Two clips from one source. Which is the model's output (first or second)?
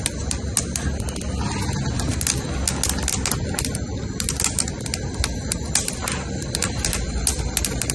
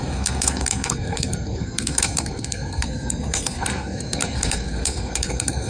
second